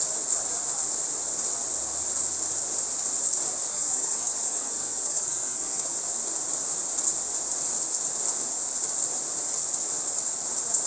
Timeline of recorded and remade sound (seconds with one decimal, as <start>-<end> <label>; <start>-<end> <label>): 0.0-3.7 recorded; 3.7-6.0 remade; 6.0-10.9 recorded